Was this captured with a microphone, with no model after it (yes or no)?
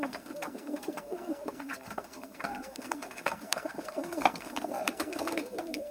no